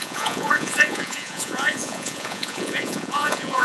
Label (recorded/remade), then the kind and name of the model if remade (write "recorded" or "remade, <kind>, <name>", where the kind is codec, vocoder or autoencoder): remade, vocoder, Vocos